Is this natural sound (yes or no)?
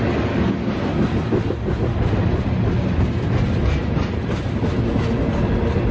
yes